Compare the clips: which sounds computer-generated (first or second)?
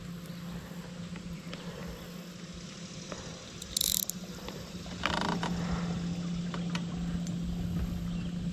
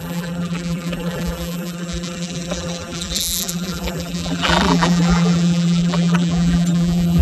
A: second